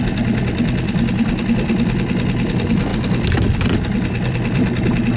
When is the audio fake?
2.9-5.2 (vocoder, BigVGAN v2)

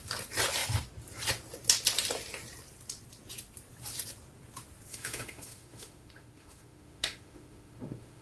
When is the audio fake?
4.9-8.2 (autoencoder, DAC-VAE)

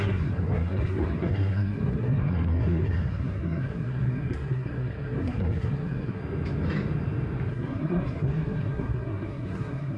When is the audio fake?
0.0-6.2 (codec, SNAC); 7.5-10.0

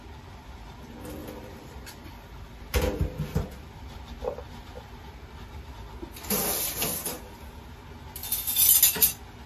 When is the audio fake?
1.2-5.7 (vocoder, BigVGAN v2); 8.2-8.7

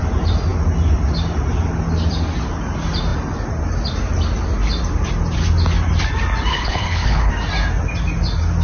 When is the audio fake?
6.5-7.3 (codec, HILCodec)

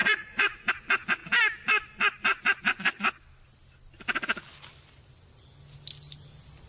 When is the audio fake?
0.0-0.7 (vocoder, Vocos)

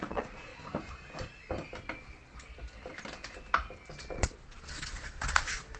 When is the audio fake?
0.0-0.5 (vocoder, Vocos); 4.0-5.8